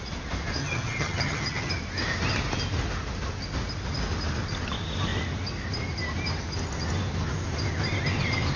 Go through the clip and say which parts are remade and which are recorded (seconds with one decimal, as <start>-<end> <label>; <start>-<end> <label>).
0.0-0.6 recorded; 0.6-1.7 remade; 1.7-8.6 recorded